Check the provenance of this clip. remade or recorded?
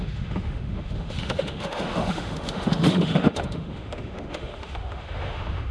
remade